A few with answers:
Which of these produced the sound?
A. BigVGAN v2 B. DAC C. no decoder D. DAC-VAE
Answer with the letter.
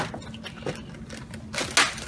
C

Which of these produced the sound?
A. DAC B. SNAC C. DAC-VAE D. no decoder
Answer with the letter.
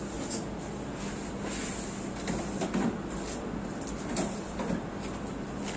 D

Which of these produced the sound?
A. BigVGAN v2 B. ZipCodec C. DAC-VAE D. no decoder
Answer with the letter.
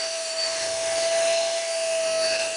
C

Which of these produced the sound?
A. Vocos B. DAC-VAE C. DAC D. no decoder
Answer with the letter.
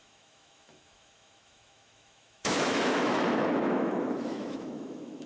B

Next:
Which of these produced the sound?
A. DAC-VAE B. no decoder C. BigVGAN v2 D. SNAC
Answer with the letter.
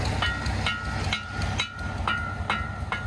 B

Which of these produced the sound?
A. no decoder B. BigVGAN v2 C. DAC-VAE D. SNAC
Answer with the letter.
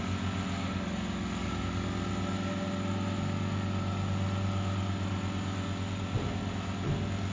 A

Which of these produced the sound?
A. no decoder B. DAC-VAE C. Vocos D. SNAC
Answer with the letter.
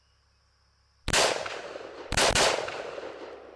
A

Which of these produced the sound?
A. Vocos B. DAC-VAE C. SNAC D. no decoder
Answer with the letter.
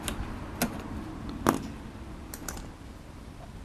D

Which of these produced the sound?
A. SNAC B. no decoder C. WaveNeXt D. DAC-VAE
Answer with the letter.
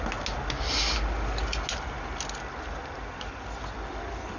B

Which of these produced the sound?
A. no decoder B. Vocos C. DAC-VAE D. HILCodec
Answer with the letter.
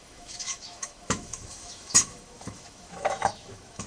C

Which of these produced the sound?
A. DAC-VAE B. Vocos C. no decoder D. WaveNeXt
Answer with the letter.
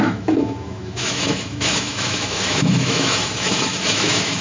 A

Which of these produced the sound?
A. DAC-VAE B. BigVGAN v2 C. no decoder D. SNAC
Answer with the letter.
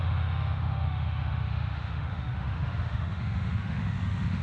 A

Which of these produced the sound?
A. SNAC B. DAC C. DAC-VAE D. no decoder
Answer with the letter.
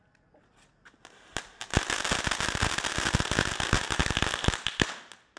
D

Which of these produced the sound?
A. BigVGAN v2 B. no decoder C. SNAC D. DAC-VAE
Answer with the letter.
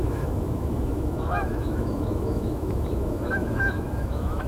D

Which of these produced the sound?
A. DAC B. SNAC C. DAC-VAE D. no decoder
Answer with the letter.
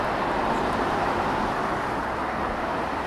D